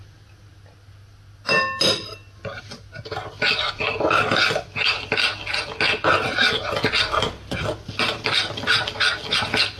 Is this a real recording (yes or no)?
yes